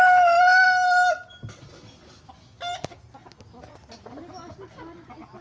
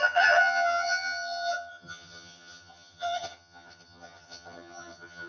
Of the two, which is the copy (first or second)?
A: second